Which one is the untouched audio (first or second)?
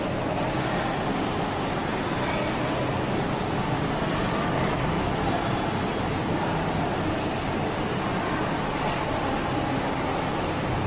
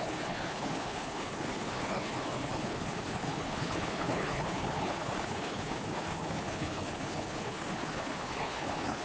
first